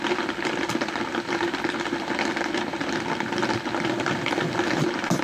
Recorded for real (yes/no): yes